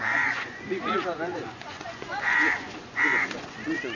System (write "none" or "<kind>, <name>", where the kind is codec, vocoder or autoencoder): vocoder, Vocos